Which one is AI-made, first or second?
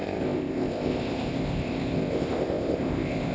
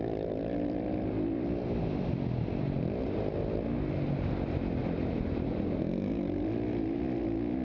first